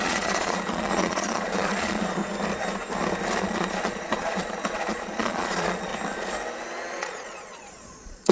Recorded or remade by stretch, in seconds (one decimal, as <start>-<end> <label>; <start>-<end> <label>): 0.0-2.2 remade; 2.2-3.4 recorded; 3.4-5.9 remade; 5.9-6.8 recorded; 6.8-8.3 remade